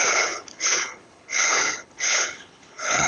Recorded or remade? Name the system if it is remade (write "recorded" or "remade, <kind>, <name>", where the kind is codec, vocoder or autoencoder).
remade, codec, HILCodec